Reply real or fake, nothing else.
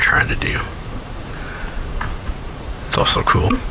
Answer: fake